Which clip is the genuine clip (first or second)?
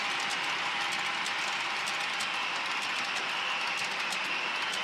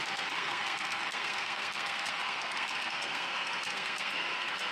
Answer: first